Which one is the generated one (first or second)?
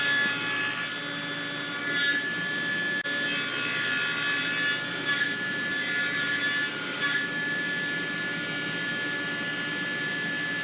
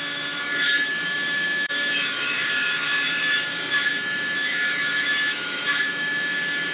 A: second